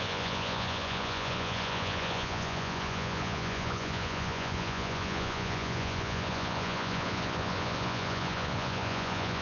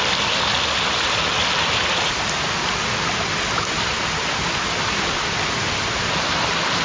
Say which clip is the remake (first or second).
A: first